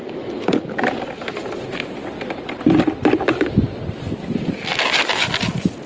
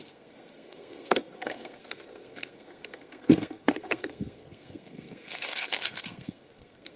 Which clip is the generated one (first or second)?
second